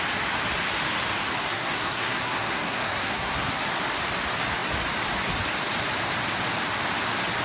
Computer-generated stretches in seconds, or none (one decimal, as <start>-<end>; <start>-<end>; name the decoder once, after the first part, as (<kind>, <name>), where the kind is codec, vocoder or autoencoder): 1.4-3.6 (codec, SNAC)